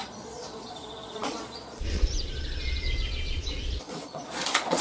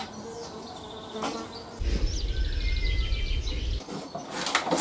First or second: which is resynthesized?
first